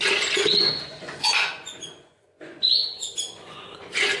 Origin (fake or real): fake